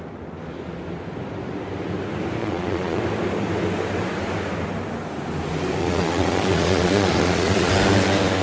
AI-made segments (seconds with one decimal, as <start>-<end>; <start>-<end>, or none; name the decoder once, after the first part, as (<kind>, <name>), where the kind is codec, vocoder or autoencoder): 2.4-3.0 (vocoder, Vocos); 5.8-7.7